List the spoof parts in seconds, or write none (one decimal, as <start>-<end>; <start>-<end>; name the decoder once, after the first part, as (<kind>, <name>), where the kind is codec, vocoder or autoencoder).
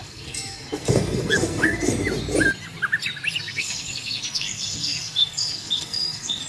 0.0-1.9 (codec, SNAC); 3.4-6.5